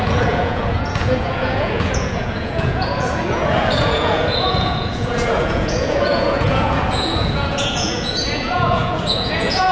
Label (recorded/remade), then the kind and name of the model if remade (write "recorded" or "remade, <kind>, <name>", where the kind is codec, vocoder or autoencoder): remade, vocoder, Vocos